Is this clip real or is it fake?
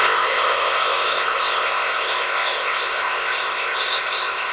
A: fake